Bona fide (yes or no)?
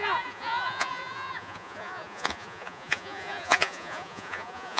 no